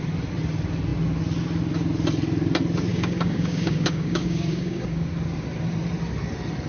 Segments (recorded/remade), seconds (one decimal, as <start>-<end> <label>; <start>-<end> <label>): 0.0-2.9 recorded; 2.9-5.1 remade; 5.1-6.7 recorded